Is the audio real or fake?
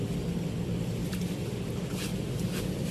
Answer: real